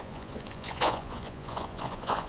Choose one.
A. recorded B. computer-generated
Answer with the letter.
B